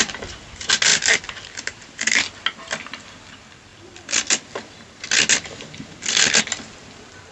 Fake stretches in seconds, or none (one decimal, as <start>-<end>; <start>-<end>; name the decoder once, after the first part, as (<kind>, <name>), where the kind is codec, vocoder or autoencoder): none